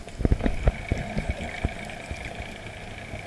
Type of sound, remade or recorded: recorded